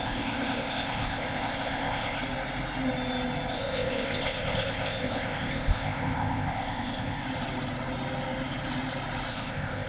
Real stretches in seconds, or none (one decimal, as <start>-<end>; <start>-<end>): 2.2-3.5; 7.2-9.3